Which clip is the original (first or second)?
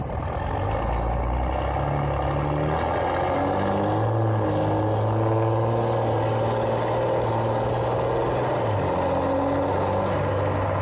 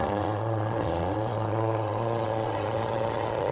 first